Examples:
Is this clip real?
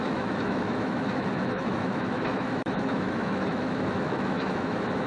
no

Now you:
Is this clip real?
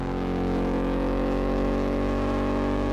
no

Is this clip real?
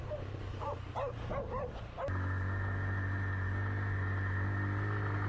yes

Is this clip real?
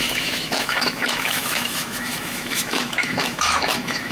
no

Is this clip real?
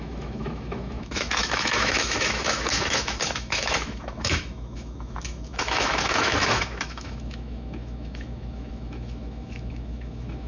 no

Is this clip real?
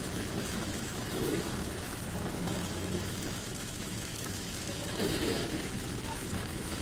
no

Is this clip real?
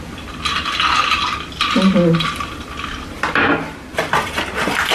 yes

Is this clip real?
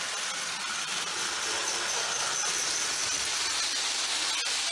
yes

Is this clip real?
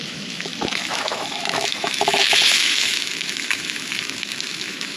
no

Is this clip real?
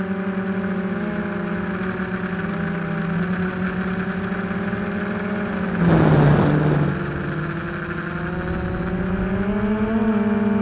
yes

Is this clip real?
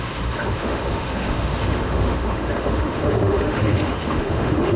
no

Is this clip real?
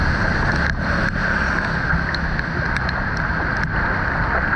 yes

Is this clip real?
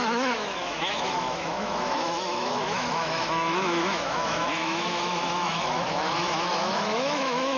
no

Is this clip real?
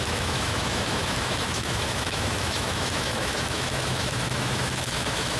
no